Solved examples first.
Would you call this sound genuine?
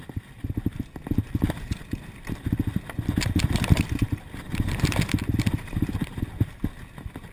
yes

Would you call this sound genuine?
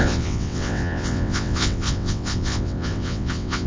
no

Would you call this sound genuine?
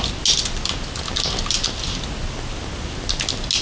yes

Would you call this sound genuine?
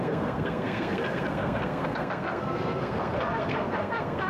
no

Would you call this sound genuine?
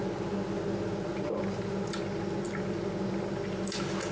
yes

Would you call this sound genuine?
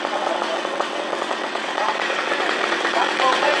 no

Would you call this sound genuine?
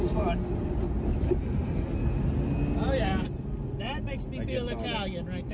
yes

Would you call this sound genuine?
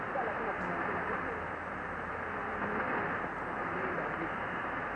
yes